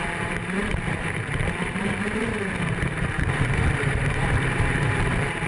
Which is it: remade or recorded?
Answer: remade